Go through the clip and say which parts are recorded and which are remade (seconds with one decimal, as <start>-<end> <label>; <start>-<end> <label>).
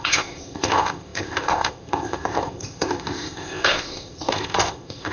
0.0-5.1 remade